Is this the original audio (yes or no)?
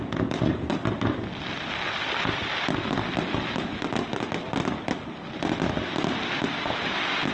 yes